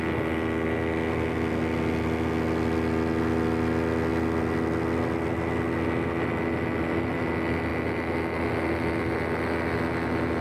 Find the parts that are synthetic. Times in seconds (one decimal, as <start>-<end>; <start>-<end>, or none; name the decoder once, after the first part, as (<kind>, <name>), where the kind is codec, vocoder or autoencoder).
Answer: none

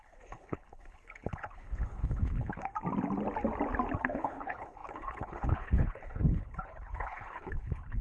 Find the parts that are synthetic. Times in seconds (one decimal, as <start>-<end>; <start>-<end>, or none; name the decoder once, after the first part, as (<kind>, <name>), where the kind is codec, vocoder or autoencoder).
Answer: 0.0-2.7 (codec, HILCodec); 4.0-8.0

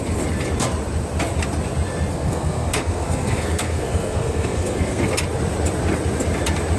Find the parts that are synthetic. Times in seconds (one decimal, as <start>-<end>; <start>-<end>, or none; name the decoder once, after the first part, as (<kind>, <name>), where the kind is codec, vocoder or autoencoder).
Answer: 2.1-5.1 (codec, SNAC)